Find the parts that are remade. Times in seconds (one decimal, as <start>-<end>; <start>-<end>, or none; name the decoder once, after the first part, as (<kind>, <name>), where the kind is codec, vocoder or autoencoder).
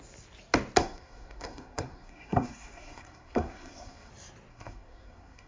0.8-4.1 (codec, SNAC); 4.5-5.5